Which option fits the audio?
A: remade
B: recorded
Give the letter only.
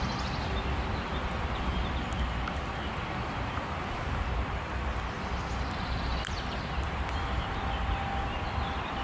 B